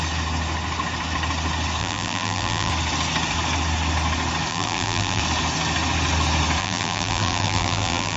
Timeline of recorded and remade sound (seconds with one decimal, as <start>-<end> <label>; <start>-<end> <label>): 0.0-1.8 recorded; 1.8-2.7 remade; 2.7-4.5 recorded; 4.5-5.2 remade; 5.2-6.6 recorded; 6.6-8.2 remade